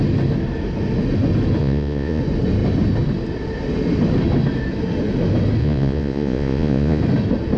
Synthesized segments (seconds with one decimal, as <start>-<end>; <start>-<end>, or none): 1.6-2.2; 5.6-7.0